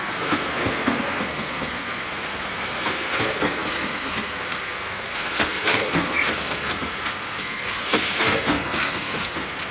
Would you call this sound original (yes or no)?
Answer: no